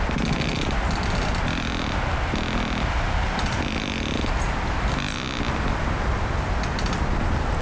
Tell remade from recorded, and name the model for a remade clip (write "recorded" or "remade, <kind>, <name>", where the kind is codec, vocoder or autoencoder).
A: recorded